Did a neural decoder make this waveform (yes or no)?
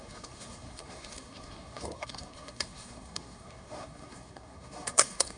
yes